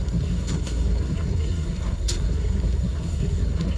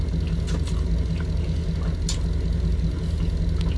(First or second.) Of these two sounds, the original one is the second